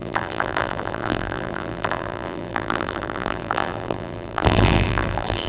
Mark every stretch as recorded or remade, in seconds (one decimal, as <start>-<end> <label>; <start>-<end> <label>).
0.0-5.5 remade